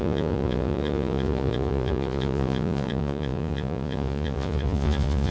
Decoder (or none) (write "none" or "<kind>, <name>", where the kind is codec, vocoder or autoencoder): vocoder, Vocos